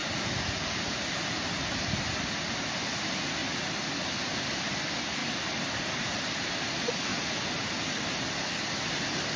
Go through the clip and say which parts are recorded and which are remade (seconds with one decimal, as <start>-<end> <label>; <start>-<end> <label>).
0.0-1.0 remade; 1.0-5.2 recorded; 5.2-6.6 remade; 6.6-9.4 recorded